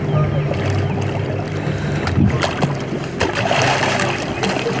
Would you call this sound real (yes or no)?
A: yes